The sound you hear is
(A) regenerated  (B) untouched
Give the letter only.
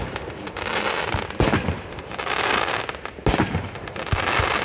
B